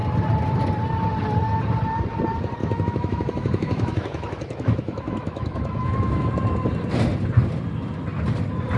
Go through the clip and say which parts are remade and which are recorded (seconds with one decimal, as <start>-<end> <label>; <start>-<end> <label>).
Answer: 0.0-2.6 recorded; 2.6-6.3 remade; 6.3-8.8 recorded